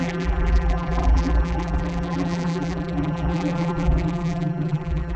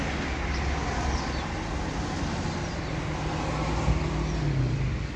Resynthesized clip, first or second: first